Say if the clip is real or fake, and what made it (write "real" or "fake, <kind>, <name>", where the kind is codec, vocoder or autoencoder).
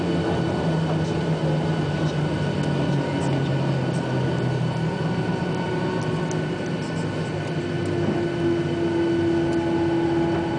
real